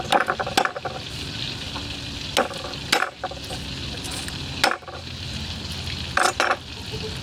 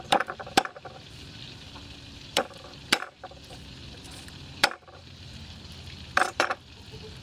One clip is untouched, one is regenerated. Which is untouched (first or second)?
first